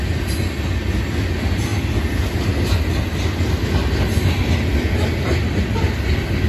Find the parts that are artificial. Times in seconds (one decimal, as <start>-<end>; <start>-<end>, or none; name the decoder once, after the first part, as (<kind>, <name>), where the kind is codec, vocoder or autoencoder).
none

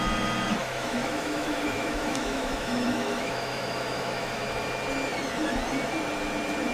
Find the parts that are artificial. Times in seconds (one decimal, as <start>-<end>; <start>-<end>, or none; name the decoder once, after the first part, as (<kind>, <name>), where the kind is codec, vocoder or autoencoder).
0.6-4.4 (autoencoder, DAC-VAE)

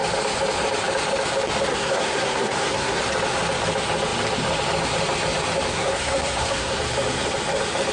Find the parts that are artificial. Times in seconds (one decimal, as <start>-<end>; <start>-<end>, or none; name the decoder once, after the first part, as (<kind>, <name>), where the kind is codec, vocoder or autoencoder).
1.7-3.0 (codec, SNAC); 5.7-6.8